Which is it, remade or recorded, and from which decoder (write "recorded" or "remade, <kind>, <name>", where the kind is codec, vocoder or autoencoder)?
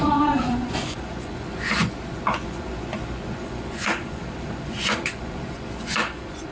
remade, vocoder, Vocos